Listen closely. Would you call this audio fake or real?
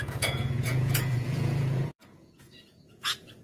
fake